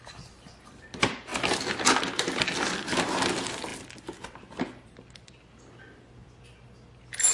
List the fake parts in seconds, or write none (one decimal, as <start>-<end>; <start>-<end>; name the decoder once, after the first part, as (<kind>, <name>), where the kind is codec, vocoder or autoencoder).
none